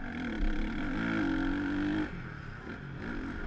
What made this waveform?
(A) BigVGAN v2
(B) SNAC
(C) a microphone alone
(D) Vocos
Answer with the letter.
C